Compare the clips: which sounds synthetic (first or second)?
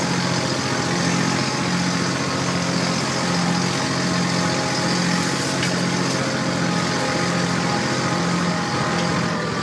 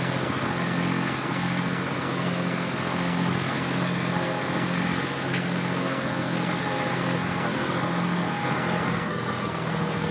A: second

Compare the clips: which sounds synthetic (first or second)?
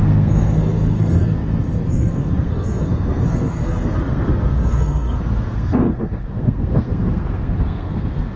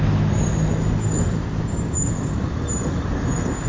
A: first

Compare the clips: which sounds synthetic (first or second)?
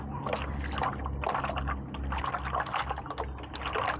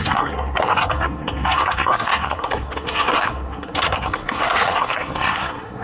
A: second